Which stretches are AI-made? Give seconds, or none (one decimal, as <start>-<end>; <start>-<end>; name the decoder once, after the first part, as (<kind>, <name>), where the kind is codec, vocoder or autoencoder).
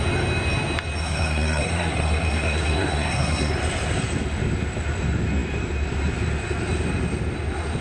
1.0-3.5 (codec, SNAC)